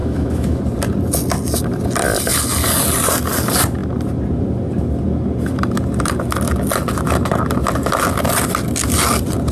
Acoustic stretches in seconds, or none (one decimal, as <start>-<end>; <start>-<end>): 0.6-9.5